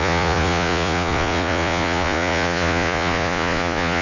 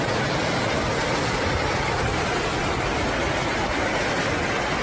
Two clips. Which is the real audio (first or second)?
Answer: second